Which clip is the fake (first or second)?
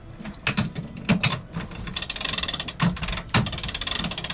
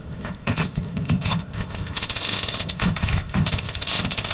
second